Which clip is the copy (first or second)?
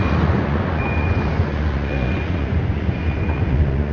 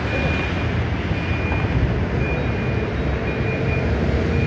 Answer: first